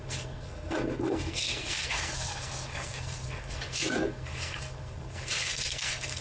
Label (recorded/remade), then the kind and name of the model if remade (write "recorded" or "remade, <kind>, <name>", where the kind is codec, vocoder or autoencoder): remade, codec, SNAC